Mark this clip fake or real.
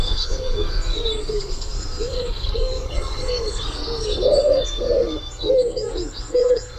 fake